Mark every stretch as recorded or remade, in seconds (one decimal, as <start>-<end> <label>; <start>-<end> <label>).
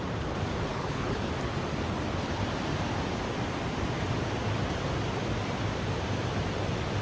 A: 0.0-0.7 recorded; 0.7-1.3 remade; 1.3-7.0 recorded